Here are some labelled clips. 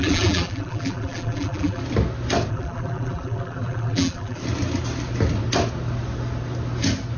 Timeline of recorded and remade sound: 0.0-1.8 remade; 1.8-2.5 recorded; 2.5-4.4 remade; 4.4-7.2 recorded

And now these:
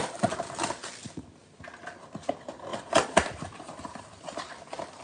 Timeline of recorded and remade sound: 0.0-1.4 recorded; 1.4-2.3 remade; 2.3-2.7 recorded; 2.7-4.6 remade; 4.6-5.0 recorded

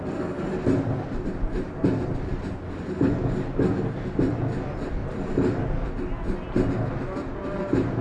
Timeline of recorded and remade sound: 0.0-5.0 recorded; 5.0-5.6 remade; 5.6-8.0 recorded

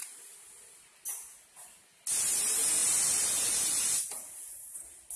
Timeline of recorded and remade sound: 0.0-2.8 recorded; 2.8-4.3 remade; 4.3-5.2 recorded